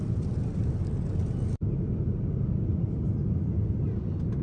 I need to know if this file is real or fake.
real